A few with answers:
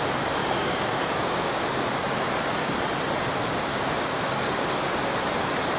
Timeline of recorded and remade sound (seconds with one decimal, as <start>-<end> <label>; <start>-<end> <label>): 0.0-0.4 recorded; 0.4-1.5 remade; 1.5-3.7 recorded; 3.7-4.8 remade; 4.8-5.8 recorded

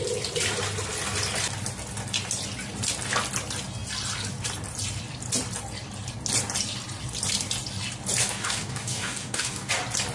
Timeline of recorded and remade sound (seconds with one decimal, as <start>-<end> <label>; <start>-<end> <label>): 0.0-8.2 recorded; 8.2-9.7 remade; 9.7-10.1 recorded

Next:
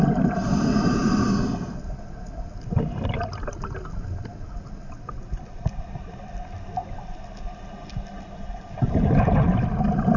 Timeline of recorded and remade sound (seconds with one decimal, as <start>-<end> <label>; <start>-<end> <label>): 0.0-10.2 recorded